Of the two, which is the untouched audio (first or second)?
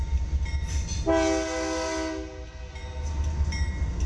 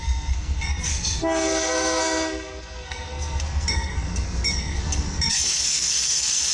first